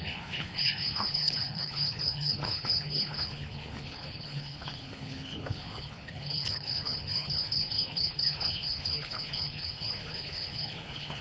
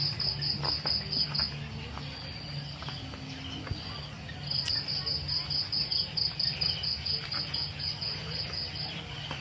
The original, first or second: second